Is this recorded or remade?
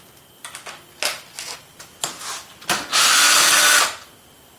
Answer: recorded